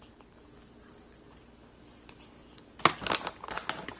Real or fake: real